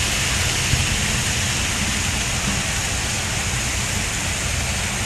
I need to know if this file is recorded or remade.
recorded